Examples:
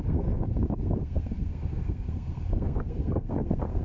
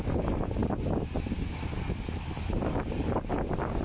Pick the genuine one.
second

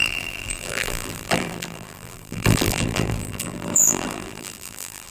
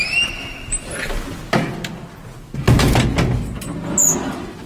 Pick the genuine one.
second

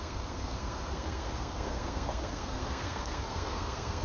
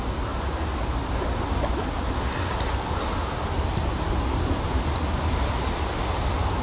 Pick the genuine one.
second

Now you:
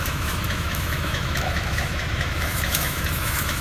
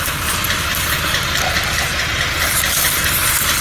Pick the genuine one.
second